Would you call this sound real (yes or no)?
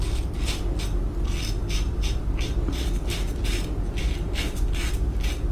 yes